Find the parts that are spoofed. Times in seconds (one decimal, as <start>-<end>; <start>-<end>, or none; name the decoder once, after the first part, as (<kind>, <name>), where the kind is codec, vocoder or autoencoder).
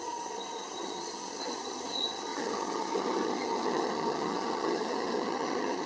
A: 0.0-5.9 (vocoder, HiFi-GAN)